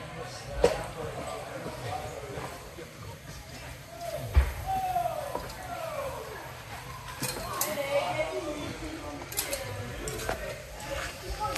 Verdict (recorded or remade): recorded